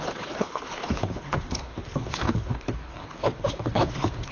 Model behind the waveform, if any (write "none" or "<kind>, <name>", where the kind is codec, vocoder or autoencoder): codec, HILCodec